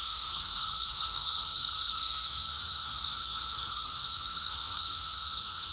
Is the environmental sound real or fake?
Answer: fake